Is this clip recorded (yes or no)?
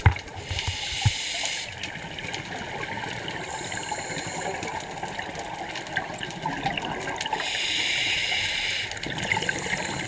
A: yes